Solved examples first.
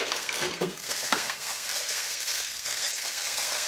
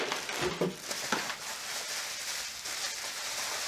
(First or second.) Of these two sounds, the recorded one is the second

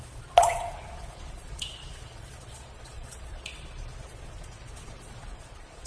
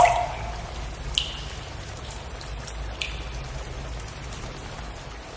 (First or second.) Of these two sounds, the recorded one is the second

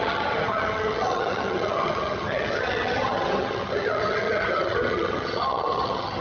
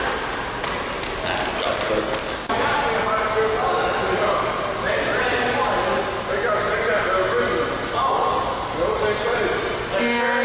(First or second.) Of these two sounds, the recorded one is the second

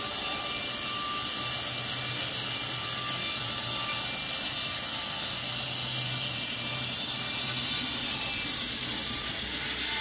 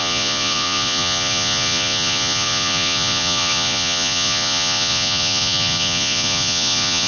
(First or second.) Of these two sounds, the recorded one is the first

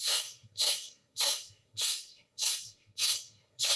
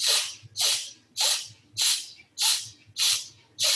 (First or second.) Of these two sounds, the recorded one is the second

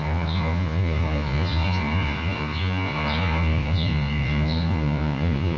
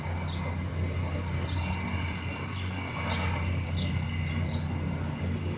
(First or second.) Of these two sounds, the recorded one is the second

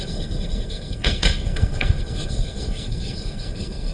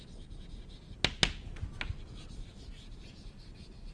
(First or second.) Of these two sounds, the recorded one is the second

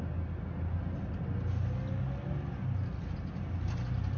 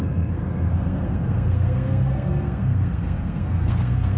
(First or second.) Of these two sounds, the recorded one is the first